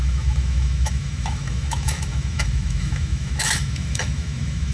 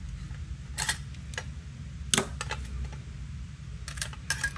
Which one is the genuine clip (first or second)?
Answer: second